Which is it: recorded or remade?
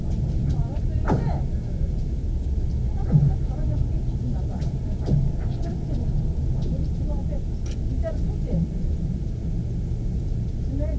recorded